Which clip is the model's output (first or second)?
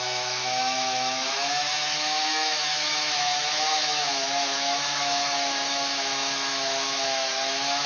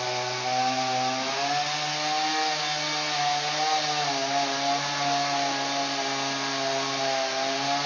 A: first